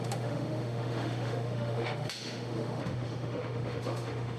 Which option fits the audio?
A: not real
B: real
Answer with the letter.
A